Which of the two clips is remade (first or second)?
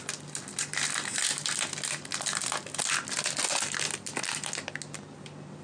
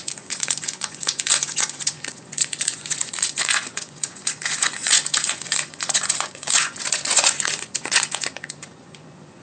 second